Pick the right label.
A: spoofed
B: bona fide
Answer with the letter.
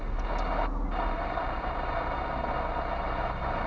B